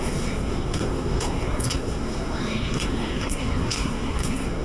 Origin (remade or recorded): remade